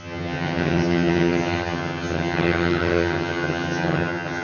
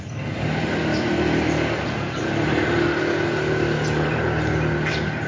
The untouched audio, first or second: second